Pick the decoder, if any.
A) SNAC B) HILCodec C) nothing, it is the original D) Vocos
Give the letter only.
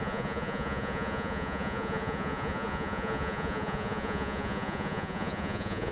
D